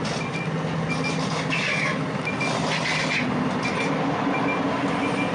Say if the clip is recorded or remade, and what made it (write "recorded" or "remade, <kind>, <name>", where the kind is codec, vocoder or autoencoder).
recorded